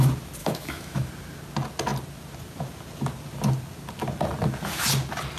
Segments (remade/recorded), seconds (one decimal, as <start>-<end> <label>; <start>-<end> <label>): 0.0-0.4 recorded; 0.4-1.1 remade; 1.1-5.4 recorded

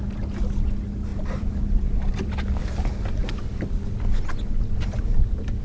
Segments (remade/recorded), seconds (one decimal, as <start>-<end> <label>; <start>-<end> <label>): 0.0-1.1 recorded; 1.1-2.9 remade; 2.9-5.6 recorded